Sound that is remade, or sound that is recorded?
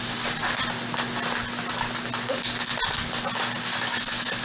recorded